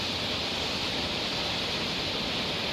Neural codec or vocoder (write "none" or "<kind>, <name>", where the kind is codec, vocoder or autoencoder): none